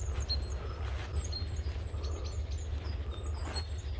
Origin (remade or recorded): recorded